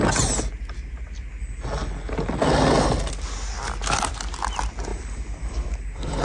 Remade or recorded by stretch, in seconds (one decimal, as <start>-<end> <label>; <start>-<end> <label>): 0.0-4.9 recorded; 4.9-6.2 remade